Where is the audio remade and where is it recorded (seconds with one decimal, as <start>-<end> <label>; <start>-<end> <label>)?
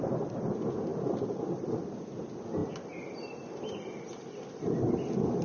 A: 0.0-5.4 recorded